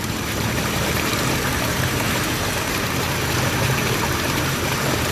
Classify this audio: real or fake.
fake